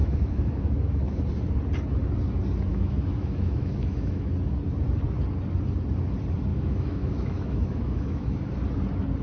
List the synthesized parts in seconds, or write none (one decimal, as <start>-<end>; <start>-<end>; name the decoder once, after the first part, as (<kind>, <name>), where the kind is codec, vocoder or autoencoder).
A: 0.0-1.2 (autoencoder, DAC-VAE); 2.7-4.3; 6.5-8.5

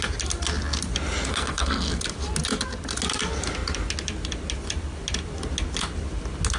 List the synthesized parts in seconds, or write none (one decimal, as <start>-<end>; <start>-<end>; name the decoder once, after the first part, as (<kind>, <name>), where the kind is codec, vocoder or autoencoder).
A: 1.3-2.0 (codec, SNAC)

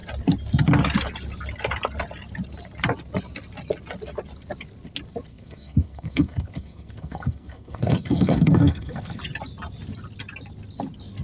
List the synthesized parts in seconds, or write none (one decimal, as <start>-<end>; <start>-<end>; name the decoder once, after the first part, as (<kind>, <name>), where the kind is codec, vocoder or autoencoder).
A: 5.3-9.2 (codec, SNAC)

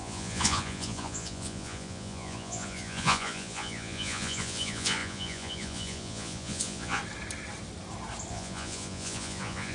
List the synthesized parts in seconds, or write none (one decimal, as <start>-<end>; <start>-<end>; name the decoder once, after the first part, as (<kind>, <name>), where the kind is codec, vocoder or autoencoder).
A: 0.0-7.0 (vocoder, Vocos); 8.3-9.7

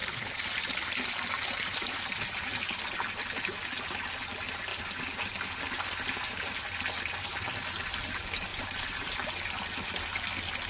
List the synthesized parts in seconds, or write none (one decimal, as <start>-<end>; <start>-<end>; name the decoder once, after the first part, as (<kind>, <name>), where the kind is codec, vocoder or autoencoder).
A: 0.0-0.5 (vocoder, BigVGAN v2); 4.7-7.5; 8.5-9.3